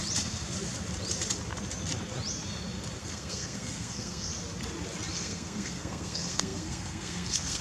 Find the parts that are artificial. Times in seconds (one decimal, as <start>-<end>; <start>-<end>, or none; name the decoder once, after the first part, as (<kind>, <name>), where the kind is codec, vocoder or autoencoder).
3.0-4.3 (codec, SNAC); 5.1-7.6